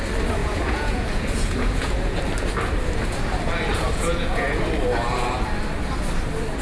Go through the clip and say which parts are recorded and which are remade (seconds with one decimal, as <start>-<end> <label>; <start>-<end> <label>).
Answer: 0.0-0.4 recorded; 0.4-2.2 remade; 2.2-3.7 recorded; 3.7-4.6 remade; 4.6-6.6 recorded